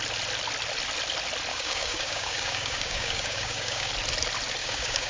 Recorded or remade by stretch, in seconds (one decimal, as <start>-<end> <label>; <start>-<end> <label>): 0.0-1.5 recorded; 1.5-3.9 remade; 3.9-4.6 recorded; 4.6-5.1 remade